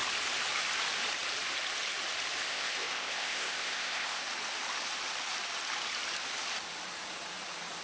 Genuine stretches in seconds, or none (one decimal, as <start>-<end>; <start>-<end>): 0.0-2.5; 4.2-7.8